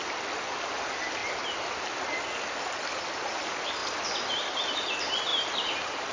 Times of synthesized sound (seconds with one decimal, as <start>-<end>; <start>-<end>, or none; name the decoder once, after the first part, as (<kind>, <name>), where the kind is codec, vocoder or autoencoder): 5.3-6.1 (vocoder, BigVGAN v2)